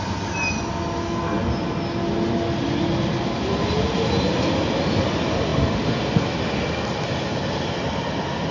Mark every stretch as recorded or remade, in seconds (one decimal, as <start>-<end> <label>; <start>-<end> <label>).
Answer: 0.0-8.5 recorded